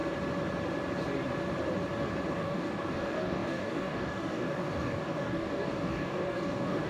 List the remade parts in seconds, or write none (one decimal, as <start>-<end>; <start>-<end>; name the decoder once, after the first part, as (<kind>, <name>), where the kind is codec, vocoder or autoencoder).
2.3-6.9 (codec, DAC)